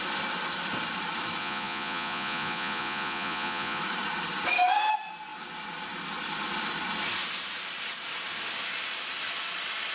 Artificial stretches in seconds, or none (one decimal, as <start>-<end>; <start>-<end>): 1.4-3.8